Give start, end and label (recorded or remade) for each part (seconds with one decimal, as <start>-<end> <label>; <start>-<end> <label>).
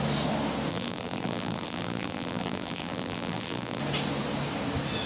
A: 0.0-0.7 recorded; 0.7-3.8 remade; 3.8-5.1 recorded